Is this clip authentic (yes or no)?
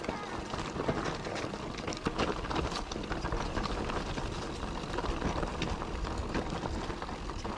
yes